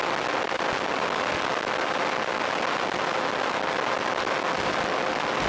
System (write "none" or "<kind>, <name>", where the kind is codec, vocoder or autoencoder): none